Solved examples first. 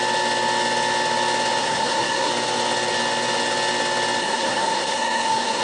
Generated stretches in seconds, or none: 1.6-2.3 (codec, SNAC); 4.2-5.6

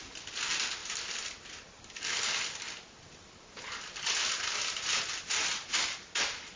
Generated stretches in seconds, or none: none

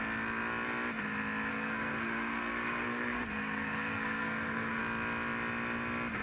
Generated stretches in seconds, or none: 1.5-4.8 (codec, SNAC)

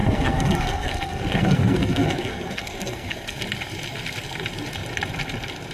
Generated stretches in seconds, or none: 0.0-3.4 (codec, SNAC)

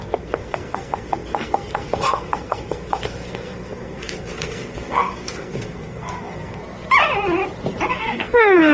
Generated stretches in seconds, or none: 0.0-6.6 (codec, SNAC); 7.9-8.7

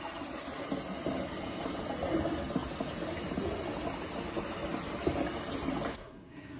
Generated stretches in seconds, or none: 5.9-6.6 (codec, SNAC)